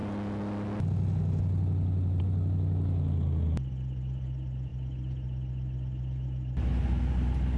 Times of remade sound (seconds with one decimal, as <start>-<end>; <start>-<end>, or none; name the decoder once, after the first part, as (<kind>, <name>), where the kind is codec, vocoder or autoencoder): none